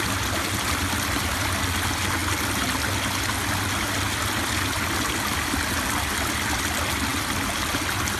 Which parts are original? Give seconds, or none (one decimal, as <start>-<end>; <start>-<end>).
0.0-8.2